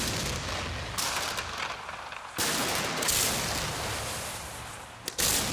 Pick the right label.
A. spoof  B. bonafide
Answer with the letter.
B